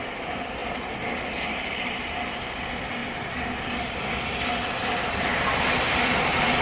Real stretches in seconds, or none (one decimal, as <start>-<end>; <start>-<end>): 0.0-6.6